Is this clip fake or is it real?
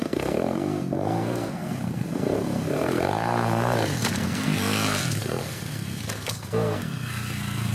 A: fake